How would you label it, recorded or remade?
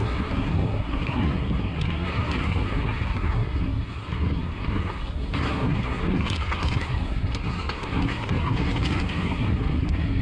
remade